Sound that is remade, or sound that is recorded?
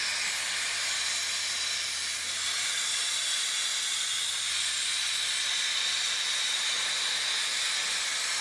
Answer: recorded